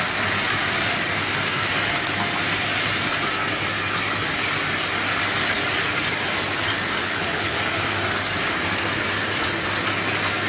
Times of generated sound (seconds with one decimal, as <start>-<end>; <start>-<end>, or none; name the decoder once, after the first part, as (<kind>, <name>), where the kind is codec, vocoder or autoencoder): 7.0-7.5 (codec, HILCodec)